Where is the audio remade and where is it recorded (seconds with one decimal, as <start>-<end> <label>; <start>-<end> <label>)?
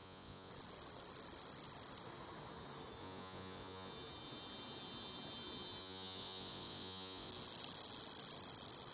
0.0-0.5 remade; 0.5-3.0 recorded; 3.0-3.9 remade; 3.9-5.8 recorded; 5.8-7.3 remade; 7.3-8.9 recorded